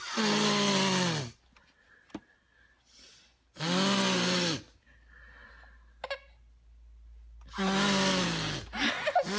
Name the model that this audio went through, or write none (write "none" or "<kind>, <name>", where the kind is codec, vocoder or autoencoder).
none